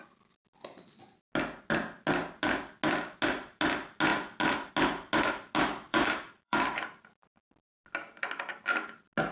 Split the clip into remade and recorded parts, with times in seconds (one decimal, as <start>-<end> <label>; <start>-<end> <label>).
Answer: 0.0-5.9 recorded; 5.9-7.4 remade; 7.4-9.3 recorded